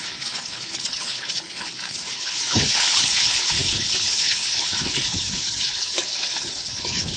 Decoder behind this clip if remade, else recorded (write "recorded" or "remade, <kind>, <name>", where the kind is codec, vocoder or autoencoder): remade, codec, HILCodec